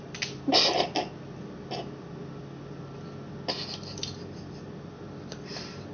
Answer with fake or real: real